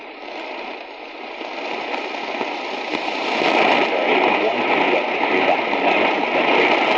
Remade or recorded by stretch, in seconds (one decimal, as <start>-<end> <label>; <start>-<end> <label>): 0.0-2.9 recorded; 2.9-4.5 remade; 4.5-7.0 recorded